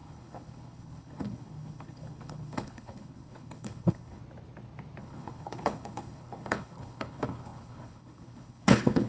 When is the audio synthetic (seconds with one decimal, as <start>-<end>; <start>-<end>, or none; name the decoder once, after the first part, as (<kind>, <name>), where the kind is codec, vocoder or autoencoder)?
0.0-4.2 (codec, HILCodec); 5.0-9.1